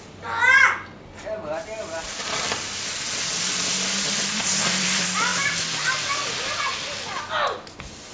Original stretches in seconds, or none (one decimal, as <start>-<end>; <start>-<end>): 0.0-8.1